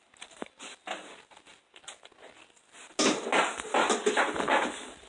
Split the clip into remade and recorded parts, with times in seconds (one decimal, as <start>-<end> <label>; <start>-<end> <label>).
0.0-5.1 recorded